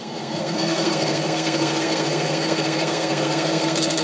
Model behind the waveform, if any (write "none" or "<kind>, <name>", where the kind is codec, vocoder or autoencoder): codec, SNAC